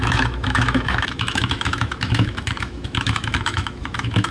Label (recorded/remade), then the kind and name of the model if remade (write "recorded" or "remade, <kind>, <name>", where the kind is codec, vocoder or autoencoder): remade, autoencoder, DAC-VAE